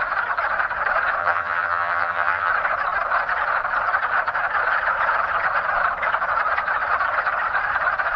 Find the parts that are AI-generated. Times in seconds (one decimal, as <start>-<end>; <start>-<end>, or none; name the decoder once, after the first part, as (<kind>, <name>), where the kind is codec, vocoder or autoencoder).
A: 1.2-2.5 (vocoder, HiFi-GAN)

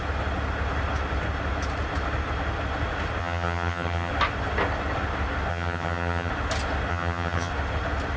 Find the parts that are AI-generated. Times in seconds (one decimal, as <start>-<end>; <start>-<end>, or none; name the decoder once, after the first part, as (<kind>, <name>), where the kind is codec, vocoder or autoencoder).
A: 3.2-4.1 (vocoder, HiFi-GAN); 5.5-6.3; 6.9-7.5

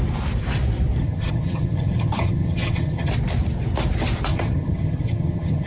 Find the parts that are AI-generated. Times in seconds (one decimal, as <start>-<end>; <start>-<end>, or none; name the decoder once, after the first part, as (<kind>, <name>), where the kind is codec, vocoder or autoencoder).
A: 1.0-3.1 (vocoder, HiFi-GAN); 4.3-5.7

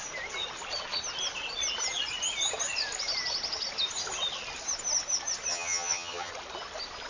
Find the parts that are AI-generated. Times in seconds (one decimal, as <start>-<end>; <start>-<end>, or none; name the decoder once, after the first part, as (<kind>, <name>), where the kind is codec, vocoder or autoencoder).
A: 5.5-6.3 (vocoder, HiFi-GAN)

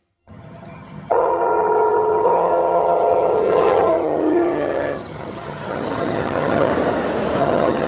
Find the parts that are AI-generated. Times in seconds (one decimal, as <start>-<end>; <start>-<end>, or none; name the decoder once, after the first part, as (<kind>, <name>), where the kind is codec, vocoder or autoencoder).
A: 0.0-6.7 (vocoder, HiFi-GAN); 7.4-7.9

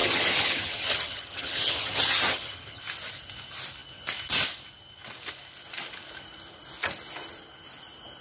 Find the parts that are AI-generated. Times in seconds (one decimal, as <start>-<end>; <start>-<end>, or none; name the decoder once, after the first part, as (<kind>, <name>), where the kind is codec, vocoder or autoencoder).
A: 0.0-2.8 (vocoder, HiFi-GAN)

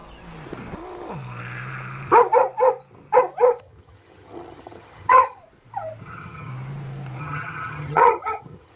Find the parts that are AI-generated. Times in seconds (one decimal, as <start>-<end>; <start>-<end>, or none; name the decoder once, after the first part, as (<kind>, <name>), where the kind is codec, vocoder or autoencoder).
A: 3.6-5.4 (vocoder, HiFi-GAN); 6.0-6.5; 7.2-8.8